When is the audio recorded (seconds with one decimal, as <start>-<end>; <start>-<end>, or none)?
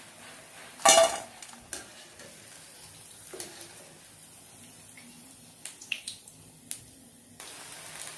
0.0-5.8; 6.3-8.2